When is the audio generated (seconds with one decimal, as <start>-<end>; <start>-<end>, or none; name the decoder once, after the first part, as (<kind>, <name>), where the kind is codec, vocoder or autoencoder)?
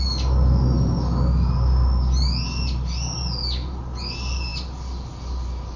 none